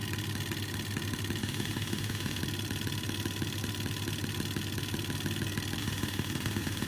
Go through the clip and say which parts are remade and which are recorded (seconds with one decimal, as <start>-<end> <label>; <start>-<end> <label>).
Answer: 0.0-1.4 recorded; 1.4-2.4 remade; 2.4-5.8 recorded; 5.8-6.9 remade